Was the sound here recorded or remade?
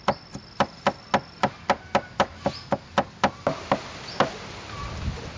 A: recorded